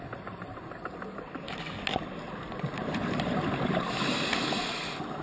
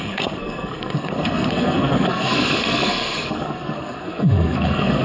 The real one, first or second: first